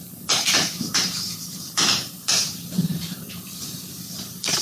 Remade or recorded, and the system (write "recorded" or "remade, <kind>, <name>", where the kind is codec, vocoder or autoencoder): remade, vocoder, BigVGAN v2